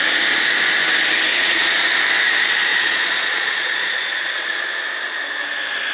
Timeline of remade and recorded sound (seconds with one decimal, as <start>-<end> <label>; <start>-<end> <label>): 0.0-1.3 recorded; 1.3-1.8 remade; 1.8-2.7 recorded; 2.7-4.4 remade; 4.4-5.9 recorded